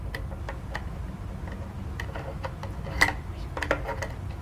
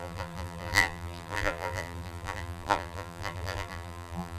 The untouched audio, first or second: first